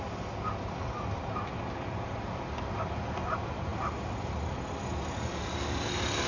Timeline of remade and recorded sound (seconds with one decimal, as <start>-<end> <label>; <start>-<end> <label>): 0.0-6.3 recorded